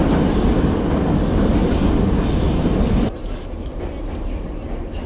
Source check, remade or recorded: recorded